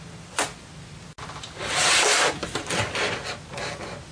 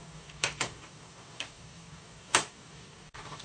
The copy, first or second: second